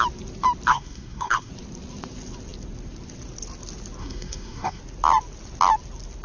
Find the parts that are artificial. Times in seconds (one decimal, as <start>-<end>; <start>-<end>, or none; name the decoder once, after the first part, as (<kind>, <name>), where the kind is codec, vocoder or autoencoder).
0.7-1.5 (codec, SNAC); 4.0-4.8